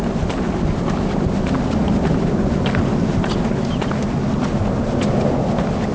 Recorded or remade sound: recorded